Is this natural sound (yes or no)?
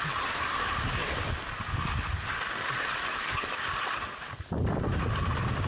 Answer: yes